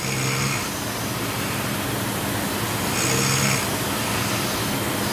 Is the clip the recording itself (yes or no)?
yes